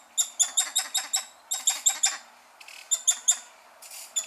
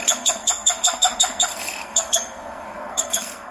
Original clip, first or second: first